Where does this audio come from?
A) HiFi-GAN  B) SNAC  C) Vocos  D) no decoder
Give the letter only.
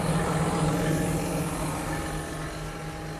D